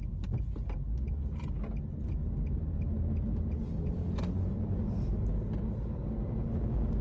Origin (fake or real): real